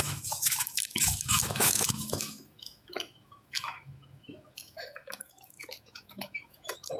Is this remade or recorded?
remade